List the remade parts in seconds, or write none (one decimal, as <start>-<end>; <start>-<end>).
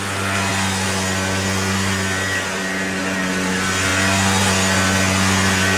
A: none